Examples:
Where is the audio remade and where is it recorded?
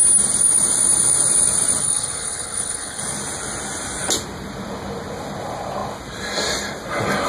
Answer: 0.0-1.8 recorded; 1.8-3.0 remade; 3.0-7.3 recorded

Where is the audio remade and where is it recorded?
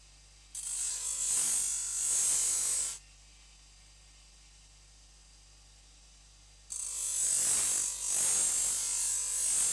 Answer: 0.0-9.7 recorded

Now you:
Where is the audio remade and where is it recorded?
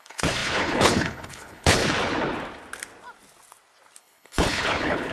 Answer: 0.0-1.8 remade; 1.8-4.0 recorded; 4.0-5.1 remade